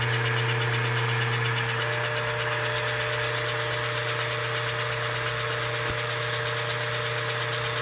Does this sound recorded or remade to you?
recorded